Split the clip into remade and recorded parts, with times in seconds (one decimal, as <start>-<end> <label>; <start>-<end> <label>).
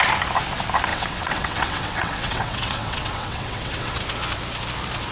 0.0-0.9 recorded; 0.9-4.0 remade; 4.0-5.1 recorded